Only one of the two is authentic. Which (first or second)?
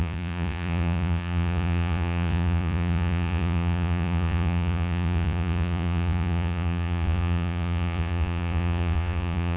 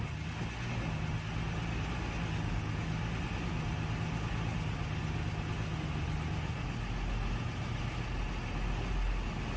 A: second